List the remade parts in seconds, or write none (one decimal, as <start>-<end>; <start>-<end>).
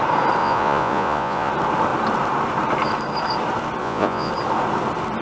0.4-1.5; 3.8-4.3